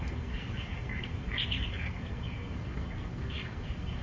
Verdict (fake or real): fake